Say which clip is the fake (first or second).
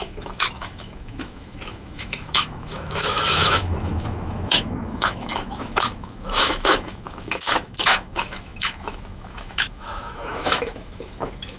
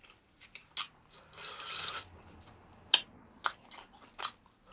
first